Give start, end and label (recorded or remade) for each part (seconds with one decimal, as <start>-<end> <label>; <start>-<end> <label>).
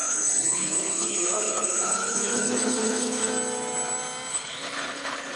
0.0-3.3 remade; 3.3-4.3 recorded; 4.3-5.4 remade